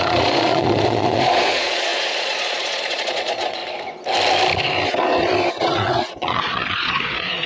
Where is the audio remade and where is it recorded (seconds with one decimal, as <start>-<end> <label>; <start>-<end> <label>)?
0.0-3.6 remade; 3.6-5.5 recorded; 5.5-7.5 remade